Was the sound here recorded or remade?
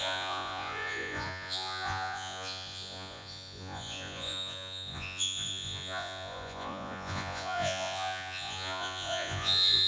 remade